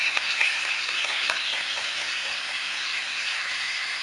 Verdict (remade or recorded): remade